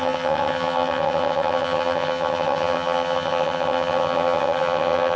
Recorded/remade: remade